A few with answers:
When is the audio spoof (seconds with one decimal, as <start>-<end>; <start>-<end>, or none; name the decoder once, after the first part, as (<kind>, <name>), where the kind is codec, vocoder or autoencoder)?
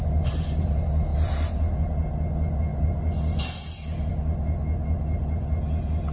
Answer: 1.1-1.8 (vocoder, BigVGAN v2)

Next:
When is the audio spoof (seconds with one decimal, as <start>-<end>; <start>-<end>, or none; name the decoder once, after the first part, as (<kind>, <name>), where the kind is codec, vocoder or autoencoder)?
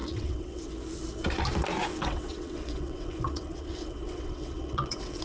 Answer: 0.0-0.6 (vocoder, WaveNeXt); 1.9-5.2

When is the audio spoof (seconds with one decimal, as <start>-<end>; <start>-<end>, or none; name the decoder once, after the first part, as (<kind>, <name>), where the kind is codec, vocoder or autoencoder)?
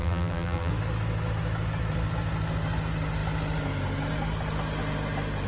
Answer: 0.0-0.7 (vocoder, BigVGAN v2)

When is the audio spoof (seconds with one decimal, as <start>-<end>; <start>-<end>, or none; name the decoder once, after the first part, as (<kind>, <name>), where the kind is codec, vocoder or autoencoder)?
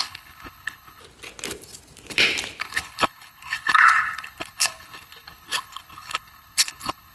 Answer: 0.0-1.0 (codec, HILCodec); 2.6-7.1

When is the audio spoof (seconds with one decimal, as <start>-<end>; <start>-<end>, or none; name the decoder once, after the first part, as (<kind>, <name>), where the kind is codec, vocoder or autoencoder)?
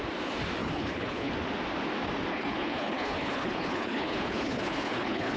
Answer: 0.6-1.3 (codec, HILCodec); 2.3-5.4